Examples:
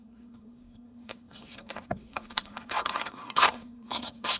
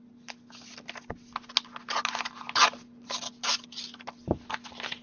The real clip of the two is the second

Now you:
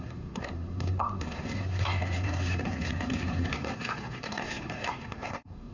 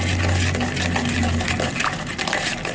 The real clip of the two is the second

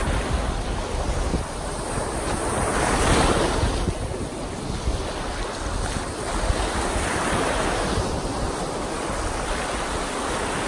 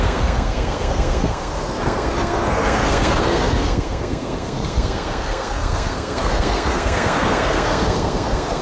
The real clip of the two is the first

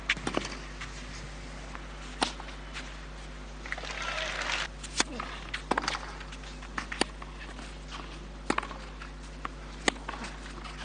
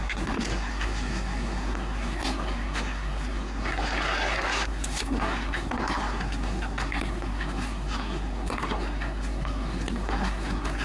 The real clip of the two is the first